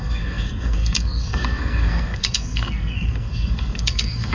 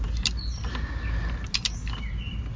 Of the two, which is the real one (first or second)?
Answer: second